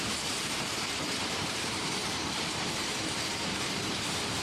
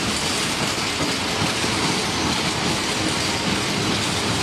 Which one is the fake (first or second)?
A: first